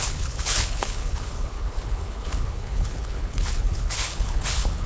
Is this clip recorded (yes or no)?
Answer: no